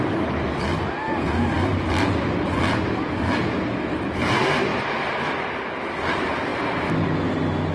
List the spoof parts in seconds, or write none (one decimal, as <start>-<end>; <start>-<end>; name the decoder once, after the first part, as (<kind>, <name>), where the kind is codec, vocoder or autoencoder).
none